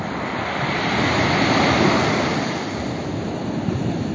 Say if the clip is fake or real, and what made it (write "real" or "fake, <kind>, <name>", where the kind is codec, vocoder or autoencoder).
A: real